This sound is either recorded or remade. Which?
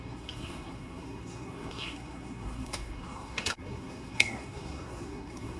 remade